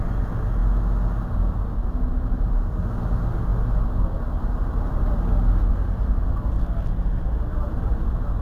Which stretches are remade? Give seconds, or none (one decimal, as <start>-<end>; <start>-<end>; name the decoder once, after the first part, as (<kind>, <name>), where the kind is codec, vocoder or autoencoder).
none